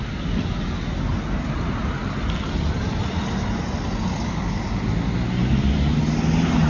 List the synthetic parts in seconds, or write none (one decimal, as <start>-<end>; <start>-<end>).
none

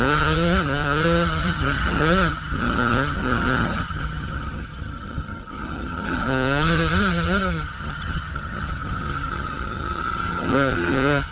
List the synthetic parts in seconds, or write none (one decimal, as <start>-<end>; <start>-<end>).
0.0-11.3

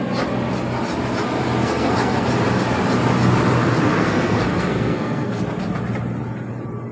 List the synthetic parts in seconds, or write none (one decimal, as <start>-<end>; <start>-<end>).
1.6-2.3; 3.9-5.4

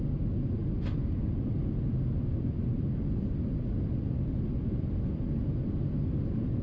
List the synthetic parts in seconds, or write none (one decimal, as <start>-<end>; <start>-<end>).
none

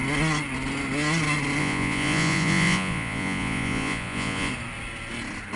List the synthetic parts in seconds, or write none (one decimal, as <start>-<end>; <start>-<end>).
1.6-4.5